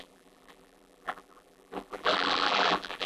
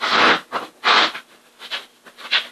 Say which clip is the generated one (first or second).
first